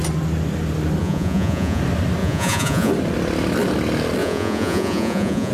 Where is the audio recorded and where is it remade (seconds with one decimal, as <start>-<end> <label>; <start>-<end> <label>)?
0.0-1.0 recorded; 1.0-1.8 remade; 1.8-2.2 recorded; 2.2-2.9 remade; 2.9-4.2 recorded; 4.2-5.5 remade